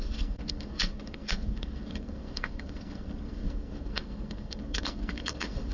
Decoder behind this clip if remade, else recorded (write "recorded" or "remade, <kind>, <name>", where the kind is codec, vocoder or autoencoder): remade, codec, SNAC